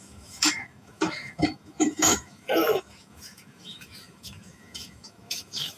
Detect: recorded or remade remade